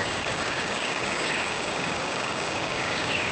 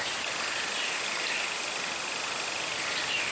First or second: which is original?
second